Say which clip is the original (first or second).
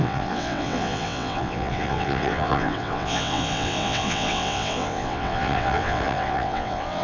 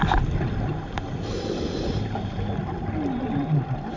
second